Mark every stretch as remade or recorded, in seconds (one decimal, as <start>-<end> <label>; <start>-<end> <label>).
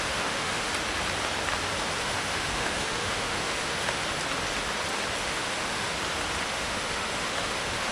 0.0-0.7 remade; 0.7-2.0 recorded; 2.0-4.0 remade; 4.0-5.2 recorded; 5.2-5.9 remade; 5.9-6.5 recorded; 6.5-7.9 remade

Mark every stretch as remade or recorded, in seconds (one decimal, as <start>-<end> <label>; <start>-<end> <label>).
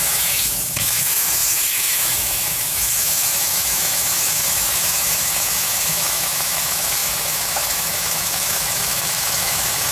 0.0-9.9 remade